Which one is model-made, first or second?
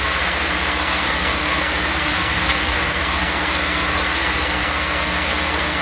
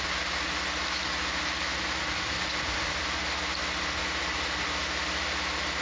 first